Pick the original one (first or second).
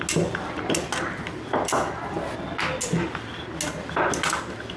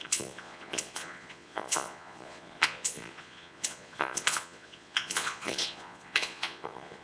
first